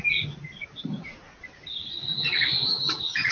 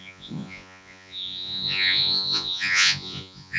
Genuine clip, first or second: first